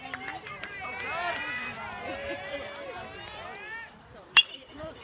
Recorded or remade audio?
remade